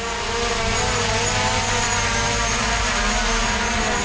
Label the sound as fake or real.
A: real